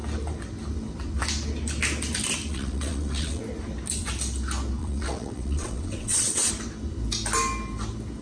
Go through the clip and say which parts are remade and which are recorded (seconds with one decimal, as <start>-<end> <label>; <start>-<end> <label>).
0.0-2.5 recorded; 2.5-3.4 remade; 3.4-4.8 recorded; 4.8-6.5 remade; 6.5-8.2 recorded